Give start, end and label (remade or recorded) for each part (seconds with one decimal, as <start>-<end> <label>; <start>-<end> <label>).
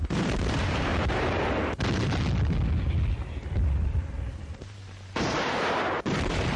0.0-0.9 remade; 0.9-4.4 recorded; 4.4-6.6 remade